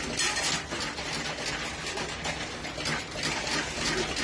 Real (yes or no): yes